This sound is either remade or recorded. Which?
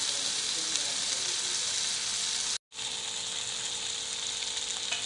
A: recorded